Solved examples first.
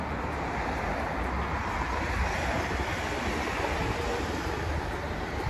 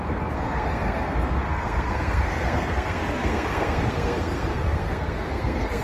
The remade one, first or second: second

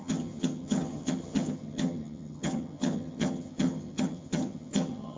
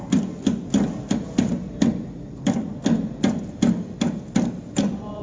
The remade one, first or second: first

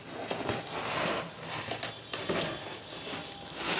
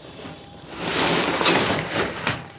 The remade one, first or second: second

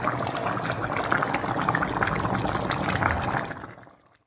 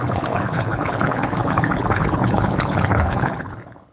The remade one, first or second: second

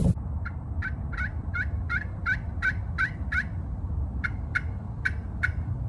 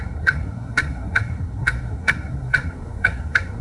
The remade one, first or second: second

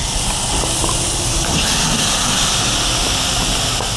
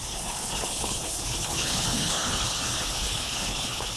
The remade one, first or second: second